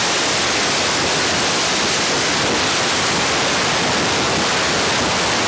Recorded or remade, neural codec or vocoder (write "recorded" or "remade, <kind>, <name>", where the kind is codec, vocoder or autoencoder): recorded